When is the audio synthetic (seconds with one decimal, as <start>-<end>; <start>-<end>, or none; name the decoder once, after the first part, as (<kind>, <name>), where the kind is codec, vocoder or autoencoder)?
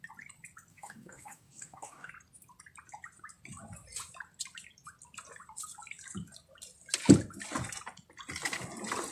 0.7-2.1 (codec, DAC)